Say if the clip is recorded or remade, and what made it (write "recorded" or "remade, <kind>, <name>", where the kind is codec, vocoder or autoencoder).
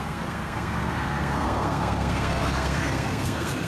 remade, codec, SNAC